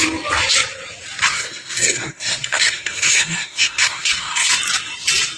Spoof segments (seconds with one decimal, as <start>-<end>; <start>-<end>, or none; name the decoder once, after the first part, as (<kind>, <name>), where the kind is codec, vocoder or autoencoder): 1.3-4.5 (codec, SNAC)